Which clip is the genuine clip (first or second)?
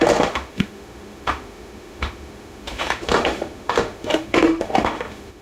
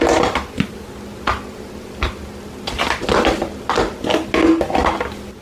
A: second